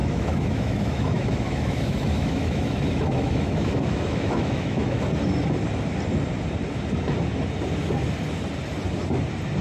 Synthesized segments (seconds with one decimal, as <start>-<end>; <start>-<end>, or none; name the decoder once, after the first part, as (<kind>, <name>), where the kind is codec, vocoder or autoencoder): 0.0-5.0 (autoencoder, DAC-VAE)